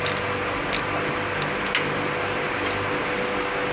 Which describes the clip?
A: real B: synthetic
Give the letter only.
A